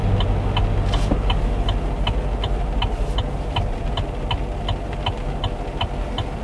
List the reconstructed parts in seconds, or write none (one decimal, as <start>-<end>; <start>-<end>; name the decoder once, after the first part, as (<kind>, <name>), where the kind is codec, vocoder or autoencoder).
none

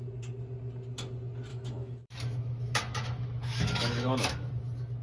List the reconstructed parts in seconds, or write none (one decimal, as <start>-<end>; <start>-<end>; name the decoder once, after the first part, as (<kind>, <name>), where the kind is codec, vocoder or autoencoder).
1.5-4.5 (autoencoder, DAC-VAE)

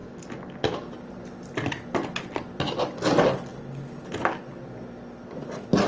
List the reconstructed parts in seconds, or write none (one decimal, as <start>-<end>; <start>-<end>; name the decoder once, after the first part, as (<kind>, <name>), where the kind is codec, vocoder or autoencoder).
none

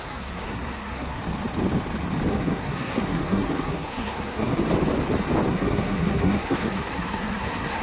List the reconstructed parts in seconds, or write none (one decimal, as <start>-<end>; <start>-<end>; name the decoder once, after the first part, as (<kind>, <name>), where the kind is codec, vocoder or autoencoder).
0.0-1.2 (codec, SNAC); 2.3-4.6; 5.5-7.8